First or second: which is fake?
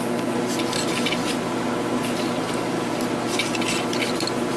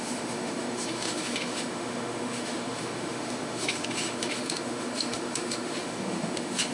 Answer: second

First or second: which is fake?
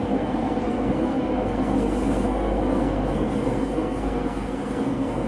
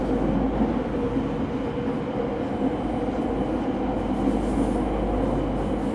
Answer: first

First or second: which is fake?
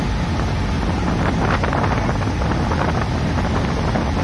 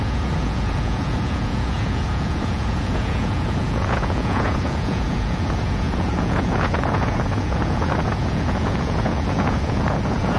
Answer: second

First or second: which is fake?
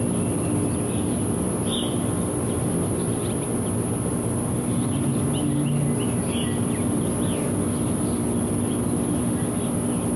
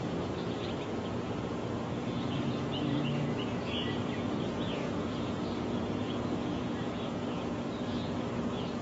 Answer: second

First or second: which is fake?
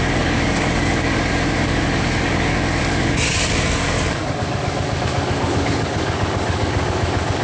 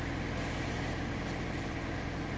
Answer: first